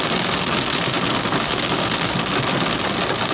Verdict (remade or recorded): recorded